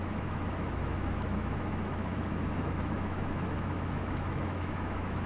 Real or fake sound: fake